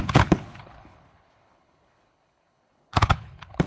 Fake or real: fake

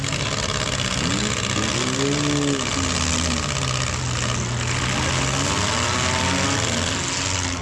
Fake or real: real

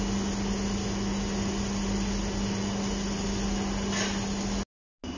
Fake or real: real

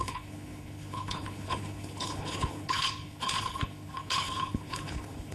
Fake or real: fake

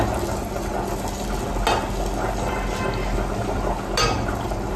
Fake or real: real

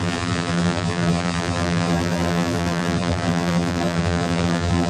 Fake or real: fake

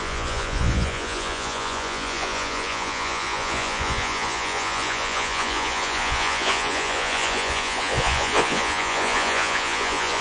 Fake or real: fake